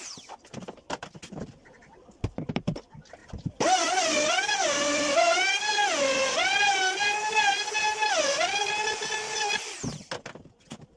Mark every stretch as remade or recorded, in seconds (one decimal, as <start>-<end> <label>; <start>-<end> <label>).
0.0-3.2 recorded; 3.2-5.3 remade; 5.3-11.0 recorded